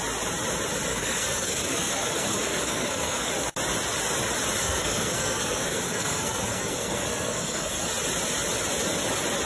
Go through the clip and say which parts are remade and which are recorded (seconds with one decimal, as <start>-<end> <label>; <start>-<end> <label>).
0.0-0.9 recorded; 0.9-3.3 remade; 3.3-4.6 recorded; 4.6-7.9 remade; 7.9-9.5 recorded